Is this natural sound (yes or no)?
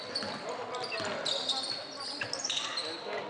yes